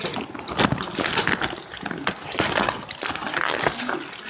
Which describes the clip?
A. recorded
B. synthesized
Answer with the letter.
A